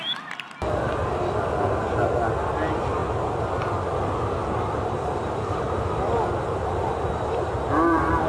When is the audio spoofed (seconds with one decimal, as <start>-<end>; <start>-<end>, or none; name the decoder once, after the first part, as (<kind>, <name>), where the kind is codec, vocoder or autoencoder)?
none